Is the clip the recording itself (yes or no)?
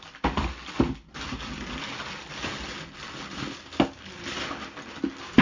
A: yes